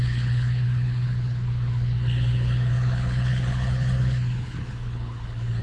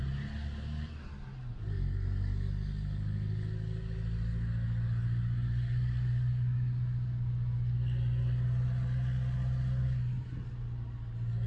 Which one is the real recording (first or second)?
second